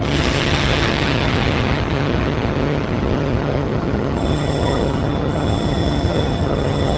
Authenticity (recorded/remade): remade